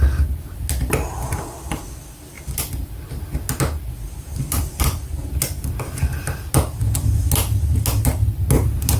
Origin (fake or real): real